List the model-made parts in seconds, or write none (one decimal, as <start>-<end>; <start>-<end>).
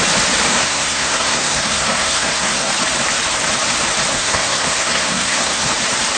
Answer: 0.5-2.7; 4.1-5.7